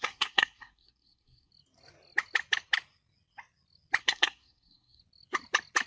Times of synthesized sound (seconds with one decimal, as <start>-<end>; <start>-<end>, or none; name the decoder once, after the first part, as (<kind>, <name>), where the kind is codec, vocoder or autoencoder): 0.0-1.5 (codec, SNAC); 4.0-5.0